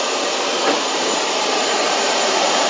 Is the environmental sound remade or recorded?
remade